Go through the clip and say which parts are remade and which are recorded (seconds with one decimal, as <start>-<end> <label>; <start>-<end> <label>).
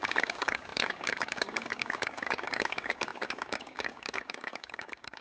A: 0.0-5.2 remade